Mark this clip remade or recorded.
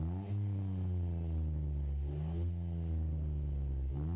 recorded